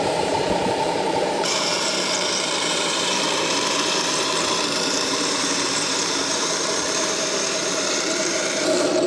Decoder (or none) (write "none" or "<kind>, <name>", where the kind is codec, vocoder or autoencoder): vocoder, BigVGAN v2